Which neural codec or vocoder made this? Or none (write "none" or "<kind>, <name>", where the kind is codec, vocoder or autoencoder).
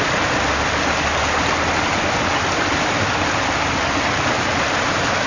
none